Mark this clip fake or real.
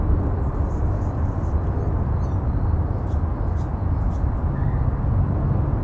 real